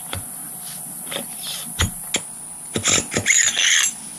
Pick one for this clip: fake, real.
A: real